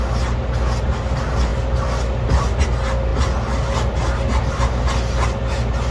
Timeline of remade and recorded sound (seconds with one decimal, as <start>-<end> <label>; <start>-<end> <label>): 0.0-5.9 recorded